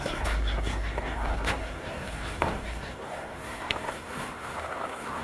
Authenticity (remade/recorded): remade